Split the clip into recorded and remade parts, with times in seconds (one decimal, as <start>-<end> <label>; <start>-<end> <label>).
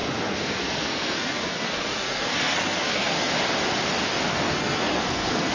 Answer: 0.0-3.3 remade; 3.3-4.3 recorded; 4.3-5.5 remade